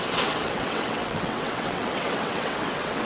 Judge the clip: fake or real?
fake